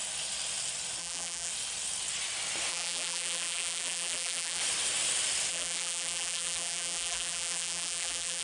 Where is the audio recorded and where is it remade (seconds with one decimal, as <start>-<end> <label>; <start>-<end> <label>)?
0.0-1.0 recorded; 1.0-1.5 remade; 1.5-2.7 recorded; 2.7-4.6 remade; 4.6-5.5 recorded; 5.5-8.4 remade

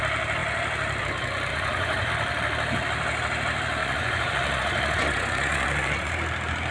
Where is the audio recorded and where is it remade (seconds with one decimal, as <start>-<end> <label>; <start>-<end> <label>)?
0.0-1.5 recorded; 1.5-2.1 remade; 2.1-3.8 recorded; 3.8-6.1 remade; 6.1-6.7 recorded

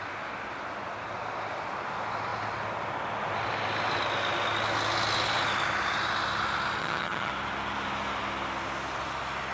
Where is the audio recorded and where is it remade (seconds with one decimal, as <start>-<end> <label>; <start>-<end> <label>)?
0.0-6.8 recorded; 6.8-7.3 remade; 7.3-9.5 recorded

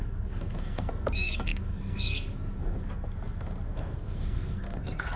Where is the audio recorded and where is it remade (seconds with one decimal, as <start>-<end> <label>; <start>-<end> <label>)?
0.0-5.2 remade

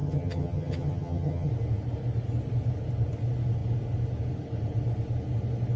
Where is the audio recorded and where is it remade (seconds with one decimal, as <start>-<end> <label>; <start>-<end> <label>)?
0.0-1.5 remade; 1.5-5.8 recorded

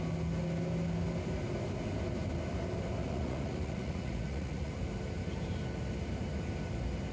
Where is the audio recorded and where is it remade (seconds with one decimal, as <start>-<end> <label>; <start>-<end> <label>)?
0.0-3.0 recorded; 3.0-4.7 remade; 4.7-7.1 recorded